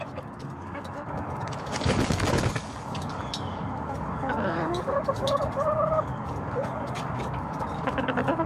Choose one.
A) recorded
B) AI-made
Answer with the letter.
B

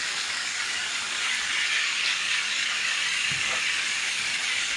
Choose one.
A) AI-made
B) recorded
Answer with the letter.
A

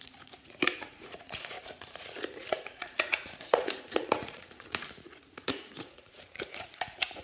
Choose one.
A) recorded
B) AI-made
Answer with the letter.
B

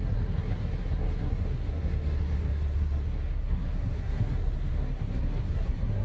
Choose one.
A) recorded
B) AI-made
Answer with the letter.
B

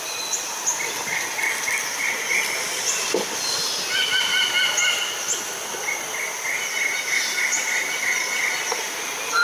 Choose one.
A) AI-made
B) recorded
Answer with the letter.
B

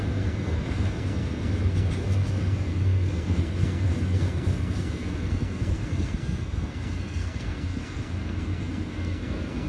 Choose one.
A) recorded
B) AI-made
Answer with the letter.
B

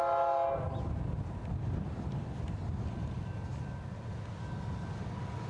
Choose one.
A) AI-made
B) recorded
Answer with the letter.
B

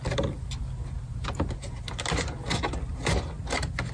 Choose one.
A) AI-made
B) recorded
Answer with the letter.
B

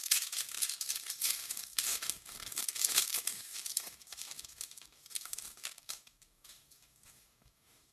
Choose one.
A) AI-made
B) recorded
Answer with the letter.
A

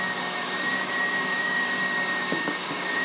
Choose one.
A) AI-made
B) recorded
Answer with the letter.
A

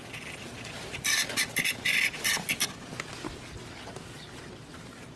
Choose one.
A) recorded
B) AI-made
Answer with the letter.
A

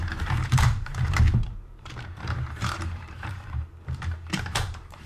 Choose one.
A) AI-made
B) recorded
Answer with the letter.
A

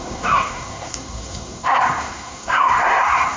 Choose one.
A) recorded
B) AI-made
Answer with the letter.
B